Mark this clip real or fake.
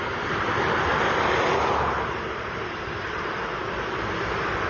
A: fake